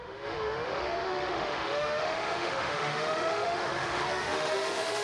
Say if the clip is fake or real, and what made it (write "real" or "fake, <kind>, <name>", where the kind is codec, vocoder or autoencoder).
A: fake, autoencoder, DAC-VAE